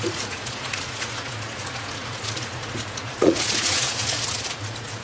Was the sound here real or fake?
fake